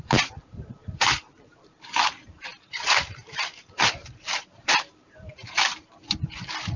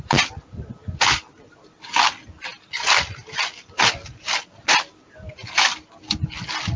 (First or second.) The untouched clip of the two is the second